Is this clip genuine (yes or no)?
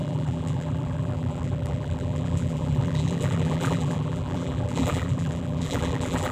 no